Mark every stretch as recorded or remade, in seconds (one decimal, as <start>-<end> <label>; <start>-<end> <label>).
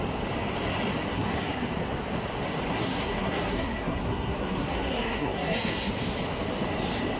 0.0-1.1 recorded; 1.1-1.6 remade; 1.6-2.7 recorded; 2.7-5.9 remade; 5.9-7.2 recorded